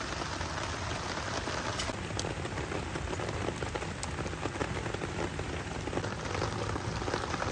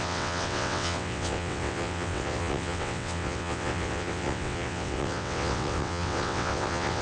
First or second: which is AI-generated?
second